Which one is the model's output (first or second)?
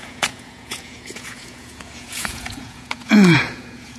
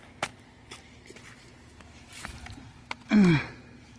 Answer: first